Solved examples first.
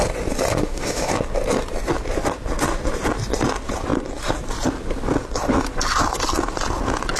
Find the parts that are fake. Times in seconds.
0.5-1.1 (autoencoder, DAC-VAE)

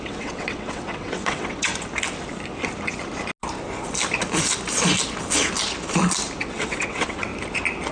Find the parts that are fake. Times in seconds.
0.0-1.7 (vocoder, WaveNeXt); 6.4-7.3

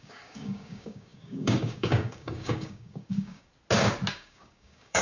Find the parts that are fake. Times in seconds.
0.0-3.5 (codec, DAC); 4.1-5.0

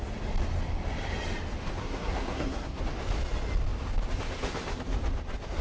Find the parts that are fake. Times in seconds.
1.8-2.8 (codec, SNAC)

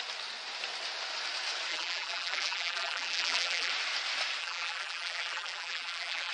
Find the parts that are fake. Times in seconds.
1.7-3.7 (vocoder, BigVGAN v2); 4.4-6.3

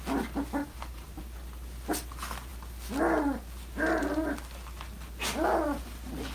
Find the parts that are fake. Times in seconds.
0.6-1.2 (vocoder, BigVGAN v2)

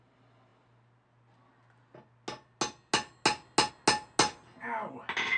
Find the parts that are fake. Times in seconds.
none

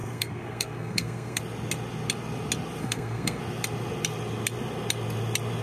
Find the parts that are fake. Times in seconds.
0.0-1.4 (codec, SNAC); 2.8-3.4